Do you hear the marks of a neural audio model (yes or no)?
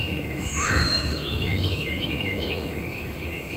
yes